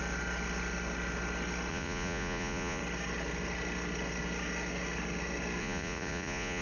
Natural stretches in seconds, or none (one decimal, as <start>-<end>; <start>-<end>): 0.0-1.7; 2.8-5.6